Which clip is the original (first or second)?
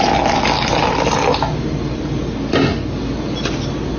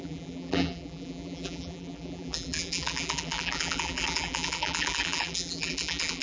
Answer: first